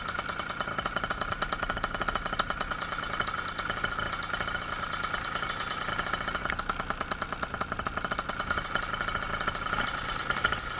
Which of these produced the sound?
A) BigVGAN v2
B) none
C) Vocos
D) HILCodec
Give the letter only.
B